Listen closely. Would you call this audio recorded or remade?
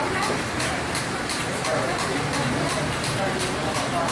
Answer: remade